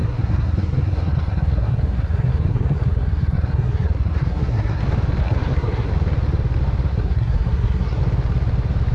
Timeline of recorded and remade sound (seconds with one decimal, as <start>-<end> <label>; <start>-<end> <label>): 0.0-4.8 remade; 4.8-5.2 recorded; 5.2-5.9 remade; 5.9-6.9 recorded; 6.9-8.0 remade; 8.0-8.9 recorded